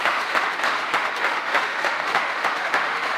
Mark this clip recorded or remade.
remade